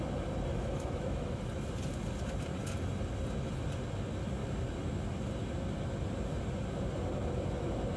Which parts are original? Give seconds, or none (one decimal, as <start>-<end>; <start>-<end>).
0.0-0.5; 1.5-8.0